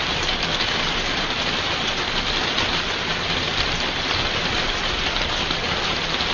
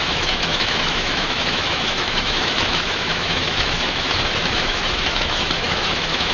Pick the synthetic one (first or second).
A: second